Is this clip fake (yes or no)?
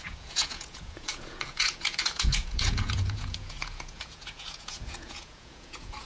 yes